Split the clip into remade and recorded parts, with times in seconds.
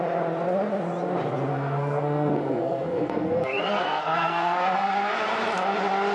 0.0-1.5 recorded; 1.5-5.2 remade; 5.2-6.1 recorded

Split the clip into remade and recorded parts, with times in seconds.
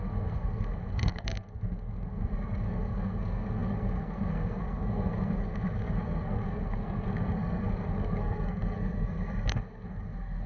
0.0-10.5 remade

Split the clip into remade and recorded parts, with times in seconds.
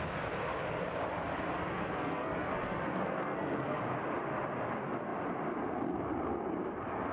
0.0-1.6 recorded; 1.6-3.8 remade; 3.8-7.1 recorded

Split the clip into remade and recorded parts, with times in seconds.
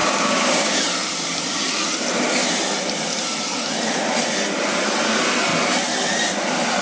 0.0-0.8 remade; 0.8-6.8 recorded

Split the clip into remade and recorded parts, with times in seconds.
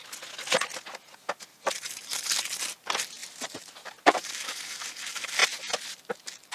0.0-1.5 recorded; 1.5-6.5 remade